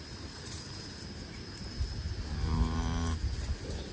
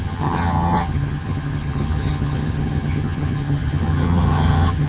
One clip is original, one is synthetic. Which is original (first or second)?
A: first